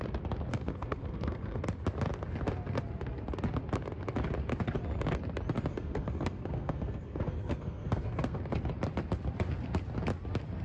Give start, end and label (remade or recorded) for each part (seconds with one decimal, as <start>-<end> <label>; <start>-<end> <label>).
0.0-0.5 recorded; 0.5-1.6 remade; 1.6-5.7 recorded; 5.7-8.4 remade; 8.4-10.6 recorded